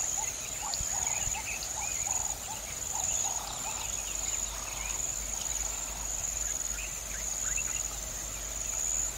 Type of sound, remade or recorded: recorded